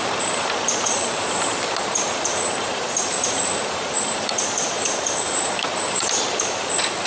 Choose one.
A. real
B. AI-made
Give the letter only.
B